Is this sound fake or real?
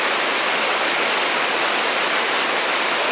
real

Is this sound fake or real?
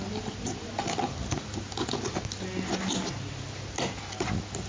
real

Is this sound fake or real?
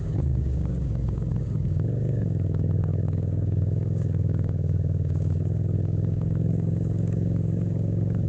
fake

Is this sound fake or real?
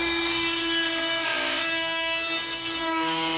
fake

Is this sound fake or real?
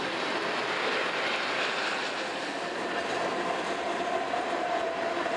real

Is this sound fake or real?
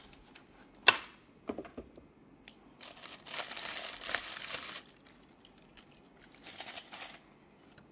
real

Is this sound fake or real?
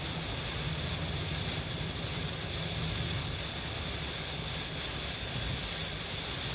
real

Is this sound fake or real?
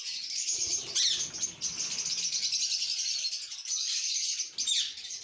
real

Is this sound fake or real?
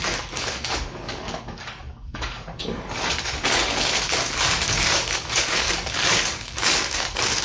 fake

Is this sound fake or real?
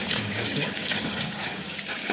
fake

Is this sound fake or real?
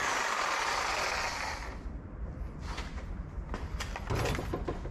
real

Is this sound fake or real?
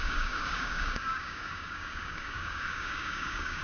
fake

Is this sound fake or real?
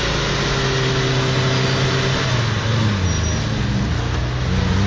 real